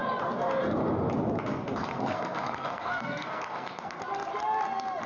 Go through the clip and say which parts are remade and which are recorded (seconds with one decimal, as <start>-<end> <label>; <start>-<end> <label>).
0.0-1.9 recorded; 1.9-4.0 remade; 4.0-5.1 recorded